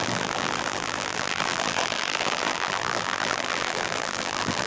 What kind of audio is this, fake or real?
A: fake